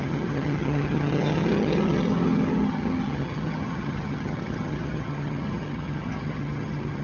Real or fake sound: fake